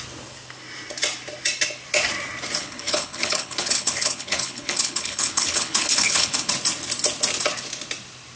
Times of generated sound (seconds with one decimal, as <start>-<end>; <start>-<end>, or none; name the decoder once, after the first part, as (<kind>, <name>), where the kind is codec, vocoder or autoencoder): 2.6-6.5 (codec, HILCodec)